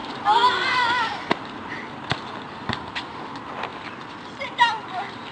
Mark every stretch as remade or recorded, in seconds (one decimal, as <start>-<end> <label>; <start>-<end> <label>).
0.0-3.2 remade; 3.2-3.7 recorded; 3.7-5.3 remade